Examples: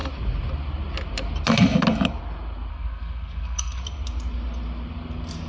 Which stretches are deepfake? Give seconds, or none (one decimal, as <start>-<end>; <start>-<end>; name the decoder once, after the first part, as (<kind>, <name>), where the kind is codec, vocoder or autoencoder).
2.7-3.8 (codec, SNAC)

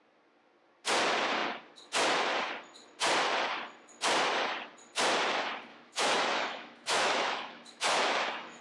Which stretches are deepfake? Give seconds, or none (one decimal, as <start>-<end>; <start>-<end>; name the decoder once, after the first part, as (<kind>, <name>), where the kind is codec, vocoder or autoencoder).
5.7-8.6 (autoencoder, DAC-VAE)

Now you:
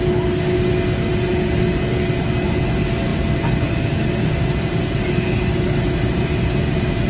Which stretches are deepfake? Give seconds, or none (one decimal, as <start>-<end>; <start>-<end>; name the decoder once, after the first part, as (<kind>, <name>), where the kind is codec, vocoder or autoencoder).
none